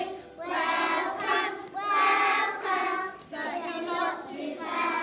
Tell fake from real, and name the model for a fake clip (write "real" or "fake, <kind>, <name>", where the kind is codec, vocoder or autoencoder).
real